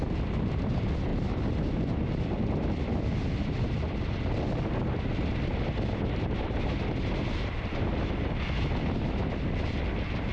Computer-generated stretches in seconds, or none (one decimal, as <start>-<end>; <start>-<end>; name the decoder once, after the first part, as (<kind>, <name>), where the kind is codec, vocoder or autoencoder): none